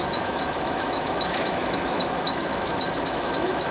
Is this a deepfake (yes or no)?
yes